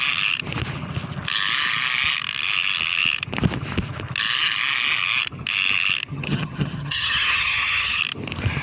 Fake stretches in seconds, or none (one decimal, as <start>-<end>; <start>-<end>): 6.1-8.0